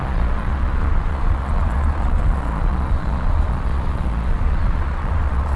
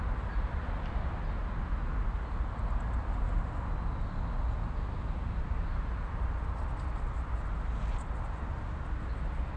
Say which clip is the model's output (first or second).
first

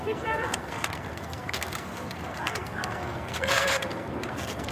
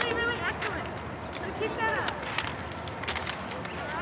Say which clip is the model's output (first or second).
first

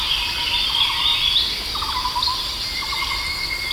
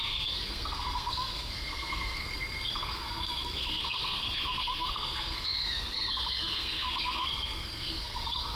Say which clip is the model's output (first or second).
second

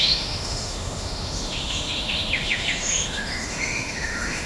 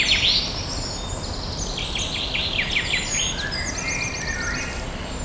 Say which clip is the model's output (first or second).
first